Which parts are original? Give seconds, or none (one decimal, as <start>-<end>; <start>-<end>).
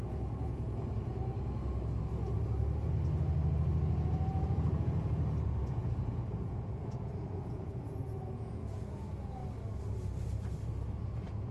1.2-4.3; 9.4-11.0